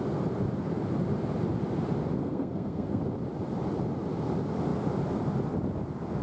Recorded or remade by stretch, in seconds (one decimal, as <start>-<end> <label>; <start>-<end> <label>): 0.0-2.2 recorded; 2.2-3.0 remade; 3.0-6.2 recorded